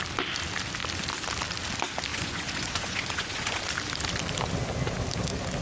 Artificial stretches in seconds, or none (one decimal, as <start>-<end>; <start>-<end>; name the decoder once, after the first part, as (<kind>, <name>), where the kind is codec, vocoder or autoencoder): 2.1-3.6 (vocoder, Vocos)